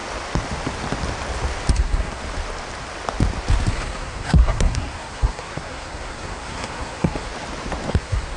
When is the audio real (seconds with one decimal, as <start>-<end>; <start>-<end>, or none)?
0.0-1.7; 2.2-3.7; 7.3-7.9